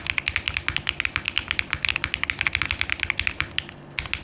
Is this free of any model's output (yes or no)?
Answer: yes